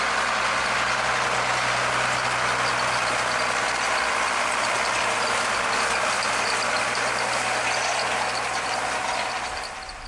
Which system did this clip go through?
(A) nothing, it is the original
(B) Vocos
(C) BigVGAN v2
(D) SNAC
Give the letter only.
A